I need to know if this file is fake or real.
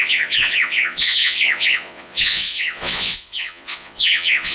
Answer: fake